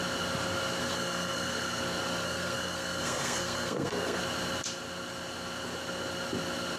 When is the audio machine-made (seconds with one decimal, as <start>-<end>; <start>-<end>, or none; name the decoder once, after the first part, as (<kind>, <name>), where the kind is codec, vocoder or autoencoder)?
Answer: 0.8-1.8 (codec, SNAC); 2.2-4.2